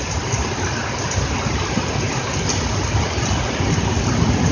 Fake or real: real